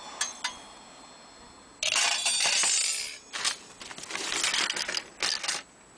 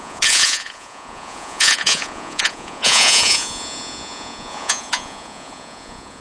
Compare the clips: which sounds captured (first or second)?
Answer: first